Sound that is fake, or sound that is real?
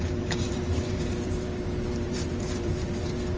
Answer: fake